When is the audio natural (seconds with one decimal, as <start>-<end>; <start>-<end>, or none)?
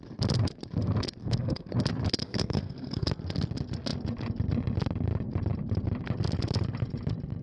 0.0-1.2; 1.7-2.2; 3.1-7.4